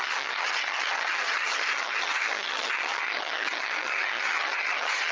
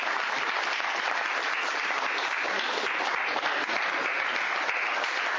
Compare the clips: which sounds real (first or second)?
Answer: second